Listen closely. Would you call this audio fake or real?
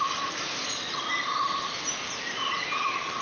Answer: real